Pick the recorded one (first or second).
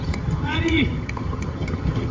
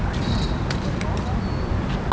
second